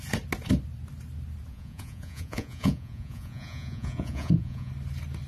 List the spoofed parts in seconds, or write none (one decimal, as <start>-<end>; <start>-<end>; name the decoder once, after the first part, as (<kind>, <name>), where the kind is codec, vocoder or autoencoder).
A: 1.5-4.7 (vocoder, Vocos)